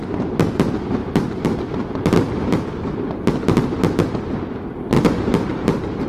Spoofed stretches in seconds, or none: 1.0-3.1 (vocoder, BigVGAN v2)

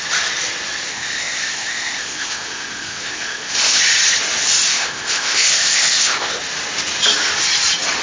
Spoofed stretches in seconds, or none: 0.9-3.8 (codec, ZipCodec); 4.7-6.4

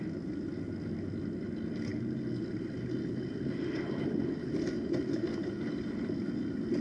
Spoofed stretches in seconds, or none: none

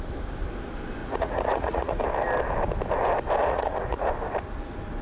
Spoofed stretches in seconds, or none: 1.0-2.0 (vocoder, Vocos); 3.4-4.1